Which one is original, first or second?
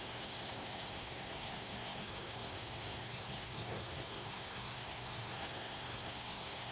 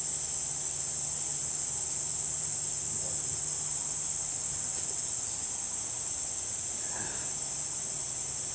second